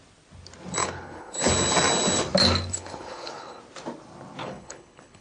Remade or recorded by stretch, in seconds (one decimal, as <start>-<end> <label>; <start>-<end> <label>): 0.0-0.8 recorded; 0.8-1.5 remade; 1.5-2.7 recorded; 2.7-3.6 remade; 3.6-4.4 recorded; 4.4-5.2 remade